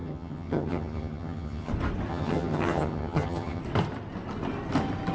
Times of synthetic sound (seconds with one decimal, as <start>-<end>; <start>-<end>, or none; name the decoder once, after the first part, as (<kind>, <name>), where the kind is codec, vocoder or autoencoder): 0.0-1.7 (vocoder, HiFi-GAN); 2.1-3.6